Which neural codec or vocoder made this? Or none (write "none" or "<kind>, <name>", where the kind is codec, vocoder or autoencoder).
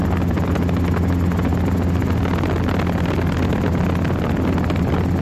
none